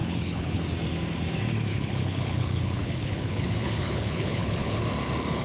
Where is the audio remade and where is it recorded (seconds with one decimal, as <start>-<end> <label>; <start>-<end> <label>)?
0.0-0.6 remade; 0.6-1.7 recorded; 1.7-4.8 remade; 4.8-5.4 recorded